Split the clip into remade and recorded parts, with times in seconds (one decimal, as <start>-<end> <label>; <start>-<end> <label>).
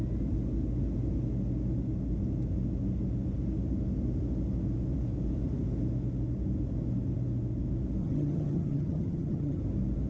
0.0-8.0 recorded; 8.0-9.6 remade; 9.6-10.1 recorded